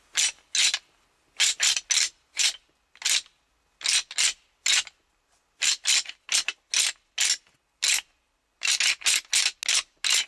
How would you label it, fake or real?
real